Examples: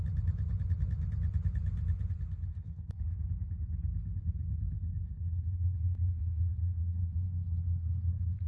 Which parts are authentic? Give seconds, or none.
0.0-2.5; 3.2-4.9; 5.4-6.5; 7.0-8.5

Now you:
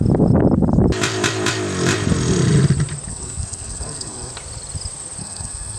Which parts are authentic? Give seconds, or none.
0.0-3.1; 4.3-5.2

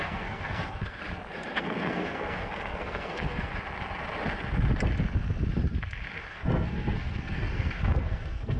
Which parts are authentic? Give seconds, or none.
1.0-1.6; 3.5-6.3

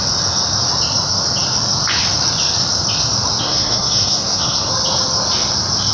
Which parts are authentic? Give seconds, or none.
0.0-3.4; 4.7-5.9